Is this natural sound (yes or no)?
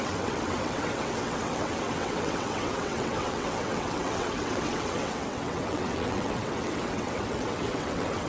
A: no